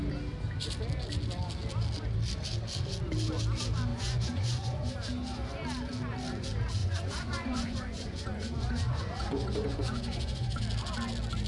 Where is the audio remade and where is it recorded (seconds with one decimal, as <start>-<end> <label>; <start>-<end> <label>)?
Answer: 0.0-3.9 recorded; 3.9-4.9 remade; 4.9-6.8 recorded; 6.8-10.6 remade; 10.6-11.5 recorded